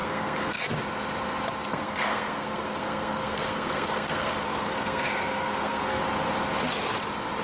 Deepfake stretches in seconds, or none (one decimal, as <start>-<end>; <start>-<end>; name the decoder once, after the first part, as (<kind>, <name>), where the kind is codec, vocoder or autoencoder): 0.0-0.6 (codec, SNAC); 1.7-6.0